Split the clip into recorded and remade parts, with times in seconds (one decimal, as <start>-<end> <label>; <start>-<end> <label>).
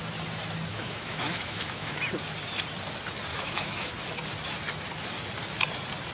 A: 0.0-0.7 recorded; 0.7-2.0 remade; 2.0-3.3 recorded; 3.3-3.9 remade; 3.9-6.1 recorded